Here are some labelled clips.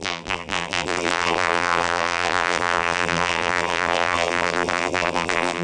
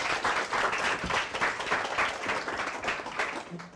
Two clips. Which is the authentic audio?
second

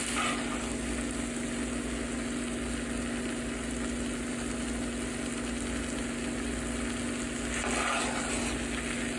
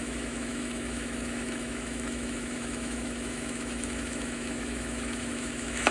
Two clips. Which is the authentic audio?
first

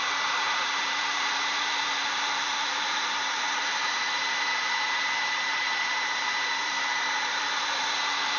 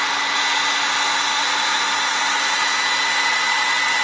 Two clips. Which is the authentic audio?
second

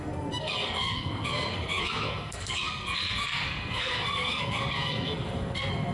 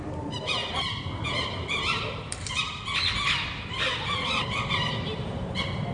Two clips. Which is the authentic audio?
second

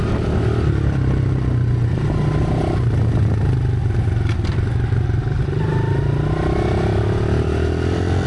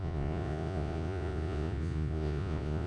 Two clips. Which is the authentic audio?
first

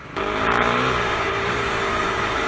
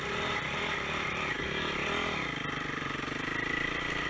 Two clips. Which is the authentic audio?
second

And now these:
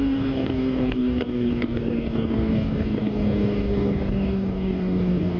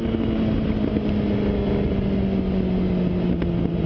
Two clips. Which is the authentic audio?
second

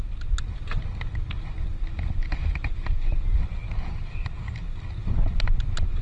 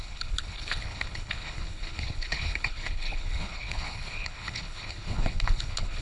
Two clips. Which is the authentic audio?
first